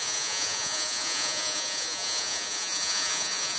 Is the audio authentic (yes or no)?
no